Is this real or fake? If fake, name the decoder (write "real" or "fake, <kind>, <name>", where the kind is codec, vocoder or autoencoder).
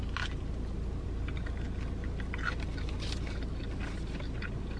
real